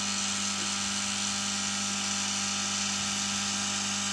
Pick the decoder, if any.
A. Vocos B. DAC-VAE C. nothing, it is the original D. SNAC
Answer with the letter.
C